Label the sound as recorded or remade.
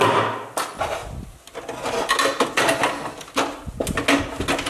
recorded